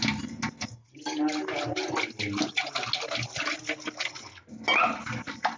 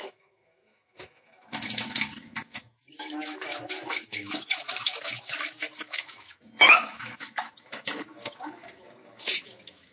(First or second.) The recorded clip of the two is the first